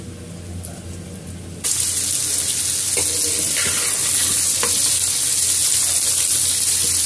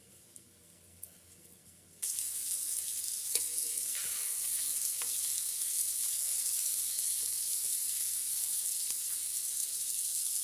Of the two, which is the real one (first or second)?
first